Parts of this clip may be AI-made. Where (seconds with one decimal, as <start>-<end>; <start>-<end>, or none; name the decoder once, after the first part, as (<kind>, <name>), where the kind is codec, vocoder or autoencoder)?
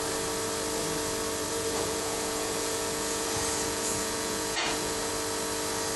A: 1.5-5.1 (vocoder, Vocos)